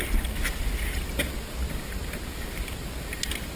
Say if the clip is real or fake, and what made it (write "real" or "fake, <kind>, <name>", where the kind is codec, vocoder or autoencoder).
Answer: real